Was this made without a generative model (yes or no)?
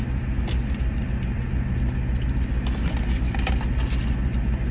yes